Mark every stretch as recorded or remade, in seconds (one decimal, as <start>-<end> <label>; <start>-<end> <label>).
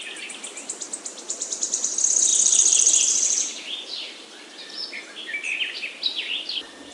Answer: 0.0-2.3 recorded; 2.3-5.2 remade; 5.2-6.9 recorded